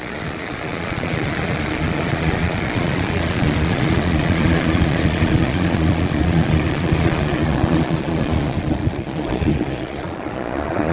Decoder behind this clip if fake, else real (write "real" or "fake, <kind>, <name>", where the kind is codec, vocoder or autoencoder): fake, vocoder, Vocos